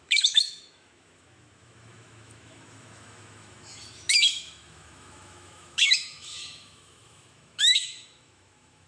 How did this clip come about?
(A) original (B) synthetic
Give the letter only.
B